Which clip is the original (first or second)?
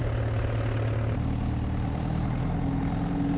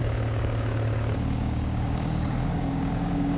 first